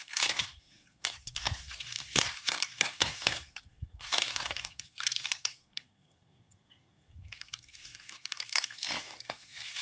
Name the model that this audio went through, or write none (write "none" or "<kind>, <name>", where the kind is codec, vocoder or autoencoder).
codec, SNAC